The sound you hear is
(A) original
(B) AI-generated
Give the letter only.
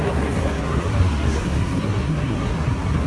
B